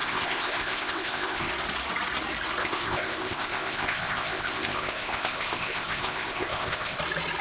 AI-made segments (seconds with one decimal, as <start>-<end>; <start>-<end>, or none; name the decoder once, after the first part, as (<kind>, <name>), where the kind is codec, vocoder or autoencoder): 0.0-1.5 (codec, ZipCodec); 2.6-7.0

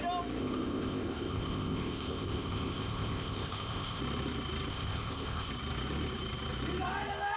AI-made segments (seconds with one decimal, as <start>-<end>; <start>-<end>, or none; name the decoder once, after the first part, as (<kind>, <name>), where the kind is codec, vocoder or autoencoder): 0.4-4.0 (codec, ZipCodec); 4.7-5.5

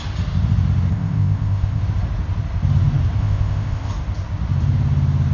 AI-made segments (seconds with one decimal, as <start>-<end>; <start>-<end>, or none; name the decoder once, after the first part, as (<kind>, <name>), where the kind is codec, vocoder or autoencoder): 0.9-1.8 (codec, ZipCodec); 3.2-3.9

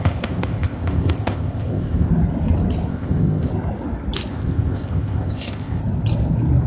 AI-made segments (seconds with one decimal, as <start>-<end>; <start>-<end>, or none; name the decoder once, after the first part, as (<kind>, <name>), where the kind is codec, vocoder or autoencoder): 0.0-2.1 (codec, ZipCodec); 2.9-3.5; 4.3-5.8